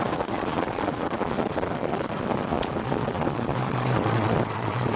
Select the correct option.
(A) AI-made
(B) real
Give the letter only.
A